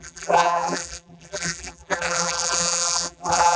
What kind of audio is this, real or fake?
fake